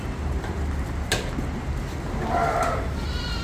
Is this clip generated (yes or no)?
no